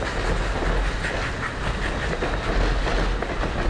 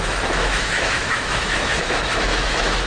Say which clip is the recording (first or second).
first